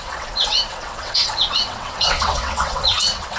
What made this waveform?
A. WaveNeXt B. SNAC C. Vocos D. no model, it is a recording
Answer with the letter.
A